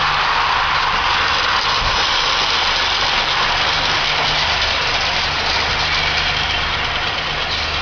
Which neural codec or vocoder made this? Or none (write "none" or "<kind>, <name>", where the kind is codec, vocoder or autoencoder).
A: none